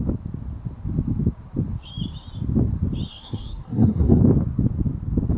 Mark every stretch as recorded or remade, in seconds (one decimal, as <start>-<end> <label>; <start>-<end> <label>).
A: 0.0-3.1 recorded; 3.1-4.2 remade; 4.2-5.4 recorded